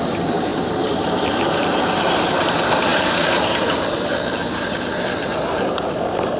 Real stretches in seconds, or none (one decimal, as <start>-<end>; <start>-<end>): none